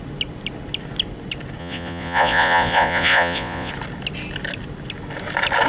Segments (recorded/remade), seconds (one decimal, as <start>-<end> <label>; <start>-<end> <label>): 0.0-1.6 recorded; 1.6-3.7 remade; 3.7-5.7 recorded

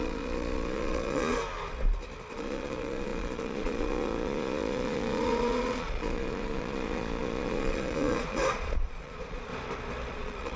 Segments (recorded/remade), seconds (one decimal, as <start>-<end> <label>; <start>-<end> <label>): 0.0-1.4 remade; 1.4-2.3 recorded; 2.3-9.5 remade; 9.5-10.1 recorded; 10.1-10.6 remade

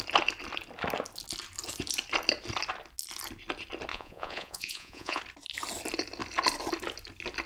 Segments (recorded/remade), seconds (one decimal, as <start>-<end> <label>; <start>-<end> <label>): 0.0-3.9 recorded; 3.9-5.2 remade; 5.2-7.5 recorded

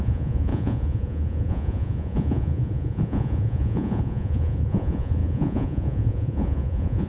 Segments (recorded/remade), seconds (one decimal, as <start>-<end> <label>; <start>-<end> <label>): 0.0-7.1 remade

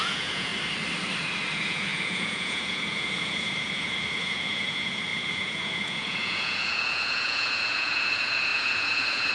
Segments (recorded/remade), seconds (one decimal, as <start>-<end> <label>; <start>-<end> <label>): 0.0-0.5 remade; 0.5-1.5 recorded; 1.5-9.3 remade

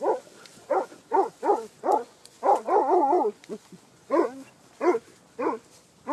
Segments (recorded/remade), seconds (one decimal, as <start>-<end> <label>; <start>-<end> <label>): 0.0-0.5 recorded; 0.5-4.2 remade; 4.2-6.1 recorded

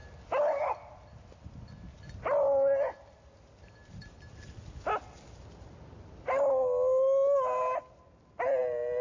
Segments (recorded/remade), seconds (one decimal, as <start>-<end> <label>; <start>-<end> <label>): 0.0-9.0 recorded

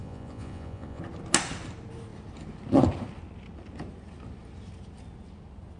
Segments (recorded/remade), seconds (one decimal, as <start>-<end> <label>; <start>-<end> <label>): 0.0-1.0 remade; 1.0-5.8 recorded